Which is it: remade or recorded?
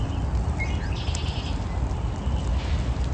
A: recorded